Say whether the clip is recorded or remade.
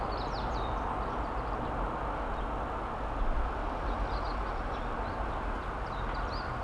recorded